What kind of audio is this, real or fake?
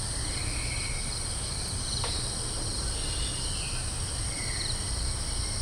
real